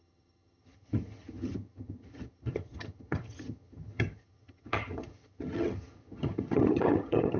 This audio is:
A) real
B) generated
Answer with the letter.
B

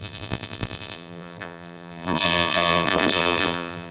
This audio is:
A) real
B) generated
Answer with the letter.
B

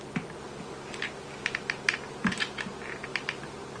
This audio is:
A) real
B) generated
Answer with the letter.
A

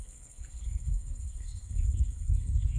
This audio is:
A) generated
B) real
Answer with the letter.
A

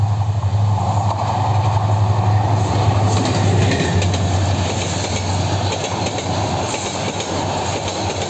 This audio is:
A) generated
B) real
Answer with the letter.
B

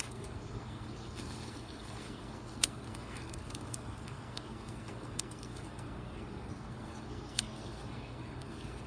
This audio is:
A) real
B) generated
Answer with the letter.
B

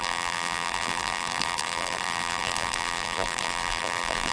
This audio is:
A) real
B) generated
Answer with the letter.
B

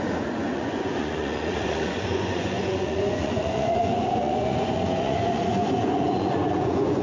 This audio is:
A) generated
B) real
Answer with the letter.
A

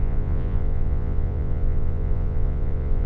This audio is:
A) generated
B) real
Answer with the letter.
A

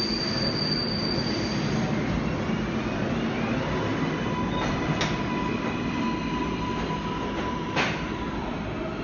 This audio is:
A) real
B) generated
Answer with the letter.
A